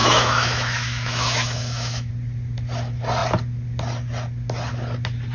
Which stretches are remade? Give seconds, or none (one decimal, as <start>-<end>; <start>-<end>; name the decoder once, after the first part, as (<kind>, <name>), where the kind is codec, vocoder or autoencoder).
0.0-2.1 (autoencoder, DAC-VAE)